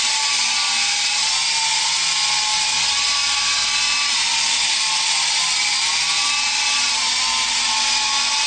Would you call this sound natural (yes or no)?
yes